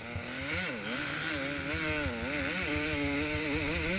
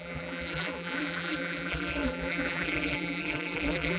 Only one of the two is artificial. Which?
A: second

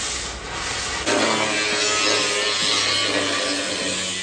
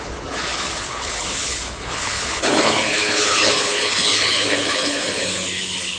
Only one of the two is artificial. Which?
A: second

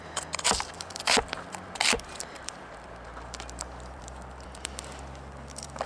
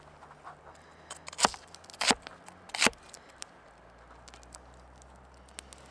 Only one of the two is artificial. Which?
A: first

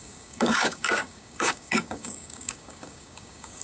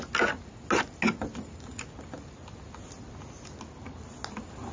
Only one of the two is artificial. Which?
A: first